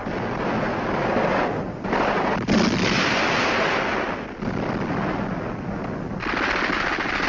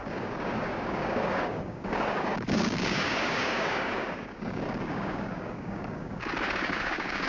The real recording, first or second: first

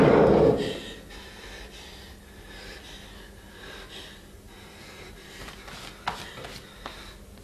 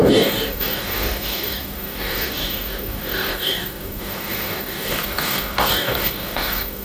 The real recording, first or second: first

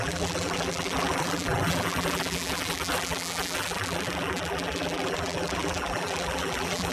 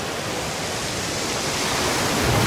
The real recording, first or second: second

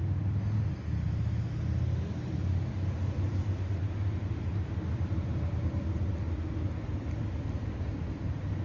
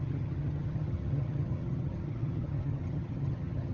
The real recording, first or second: first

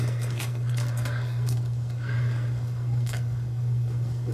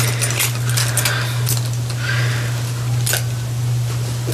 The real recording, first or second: second